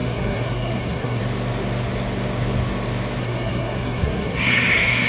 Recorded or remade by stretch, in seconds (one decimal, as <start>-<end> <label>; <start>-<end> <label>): 0.0-1.2 remade; 1.2-3.2 recorded; 3.2-5.1 remade